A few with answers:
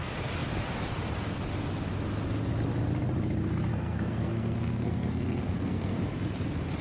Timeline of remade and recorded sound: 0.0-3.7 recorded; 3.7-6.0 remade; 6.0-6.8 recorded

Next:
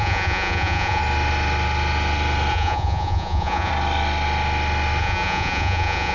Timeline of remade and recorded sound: 0.0-1.0 remade; 1.0-2.5 recorded; 2.5-3.7 remade; 3.7-5.0 recorded; 5.0-6.1 remade

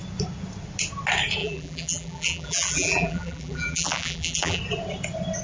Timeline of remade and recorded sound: 0.0-1.4 recorded; 1.4-4.6 remade; 4.6-5.4 recorded

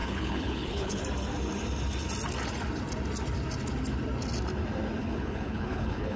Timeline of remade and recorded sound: 0.0-1.0 remade; 1.0-5.0 recorded; 5.0-6.2 remade